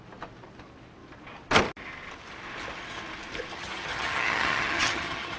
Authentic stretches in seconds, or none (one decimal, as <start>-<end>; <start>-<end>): 0.0-3.5